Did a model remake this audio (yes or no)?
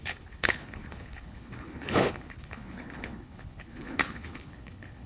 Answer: yes